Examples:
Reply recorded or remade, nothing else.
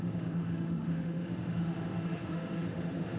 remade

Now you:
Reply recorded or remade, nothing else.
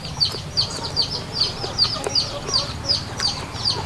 recorded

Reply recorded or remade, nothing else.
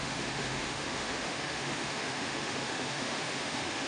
remade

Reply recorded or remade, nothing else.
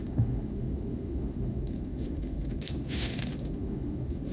remade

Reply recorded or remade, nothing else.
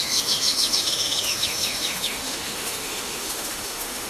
remade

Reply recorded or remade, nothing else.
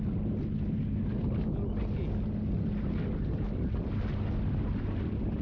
recorded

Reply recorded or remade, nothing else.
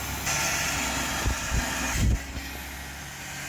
recorded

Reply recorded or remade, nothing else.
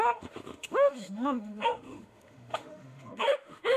remade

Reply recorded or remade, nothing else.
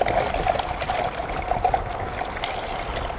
recorded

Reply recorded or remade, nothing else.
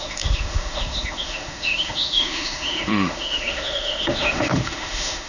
remade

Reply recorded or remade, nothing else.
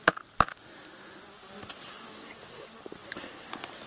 recorded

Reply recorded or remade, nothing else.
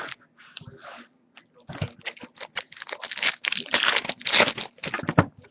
recorded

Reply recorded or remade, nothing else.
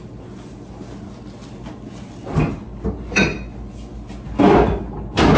recorded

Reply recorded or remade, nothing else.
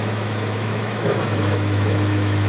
remade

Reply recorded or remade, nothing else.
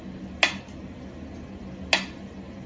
recorded